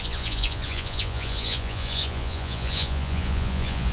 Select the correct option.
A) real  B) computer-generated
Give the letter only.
B